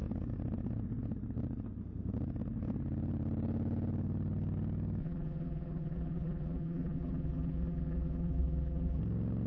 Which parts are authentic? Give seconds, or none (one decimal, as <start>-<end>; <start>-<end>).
0.0-5.0; 9.0-9.5